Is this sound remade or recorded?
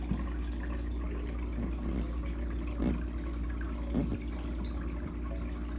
recorded